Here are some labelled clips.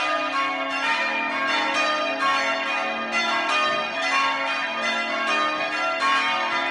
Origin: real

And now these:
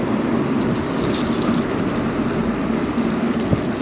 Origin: real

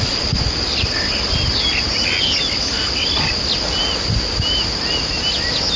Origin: real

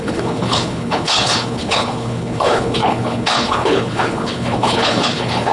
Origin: fake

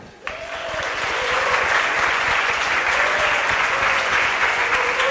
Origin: fake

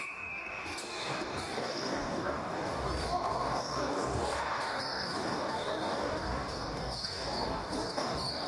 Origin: fake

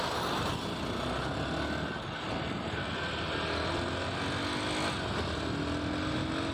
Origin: real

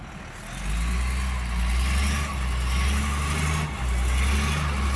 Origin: real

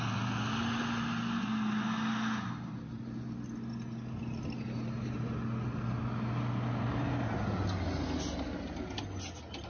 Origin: real